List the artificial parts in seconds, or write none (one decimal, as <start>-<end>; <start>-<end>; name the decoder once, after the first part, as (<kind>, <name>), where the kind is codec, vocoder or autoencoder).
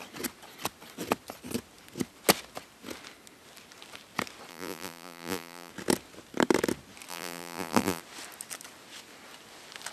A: 4.5-5.7 (vocoder, BigVGAN v2); 7.1-8.0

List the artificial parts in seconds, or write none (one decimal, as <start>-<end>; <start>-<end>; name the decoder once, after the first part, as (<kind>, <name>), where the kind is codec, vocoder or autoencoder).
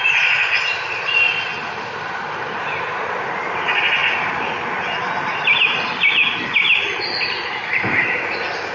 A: 0.0-6.2 (vocoder, BigVGAN v2); 6.9-8.7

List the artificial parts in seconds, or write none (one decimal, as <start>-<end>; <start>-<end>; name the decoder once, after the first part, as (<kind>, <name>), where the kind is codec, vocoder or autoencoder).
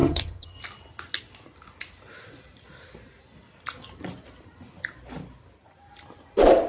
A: 0.0-0.6 (vocoder, HiFi-GAN)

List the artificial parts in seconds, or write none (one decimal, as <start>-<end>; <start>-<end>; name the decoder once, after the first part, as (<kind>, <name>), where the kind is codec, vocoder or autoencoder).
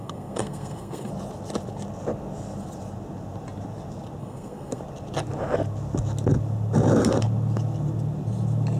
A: 0.0-1.1 (codec, SNAC); 4.2-4.8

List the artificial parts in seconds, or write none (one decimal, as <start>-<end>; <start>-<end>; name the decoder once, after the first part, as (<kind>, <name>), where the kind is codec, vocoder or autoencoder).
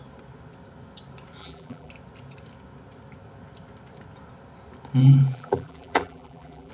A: 1.4-1.9 (vocoder, BigVGAN v2); 5.0-6.7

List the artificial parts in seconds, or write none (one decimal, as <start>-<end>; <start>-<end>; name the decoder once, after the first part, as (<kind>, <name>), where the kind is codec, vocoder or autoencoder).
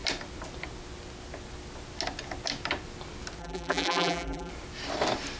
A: 3.4-4.5 (vocoder, BigVGAN v2)